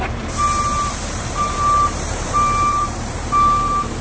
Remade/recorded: remade